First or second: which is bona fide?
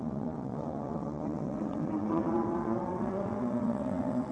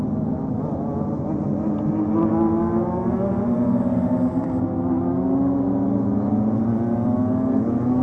second